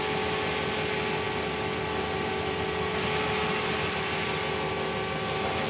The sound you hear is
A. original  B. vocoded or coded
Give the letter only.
A